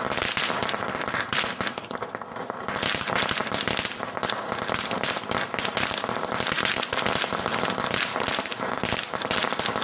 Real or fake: fake